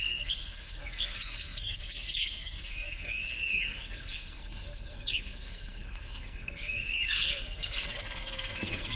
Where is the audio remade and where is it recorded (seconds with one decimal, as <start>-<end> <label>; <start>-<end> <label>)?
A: 0.0-9.0 remade